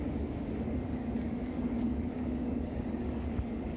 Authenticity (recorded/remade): remade